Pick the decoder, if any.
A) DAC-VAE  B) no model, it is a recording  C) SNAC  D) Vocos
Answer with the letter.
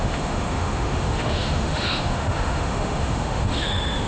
A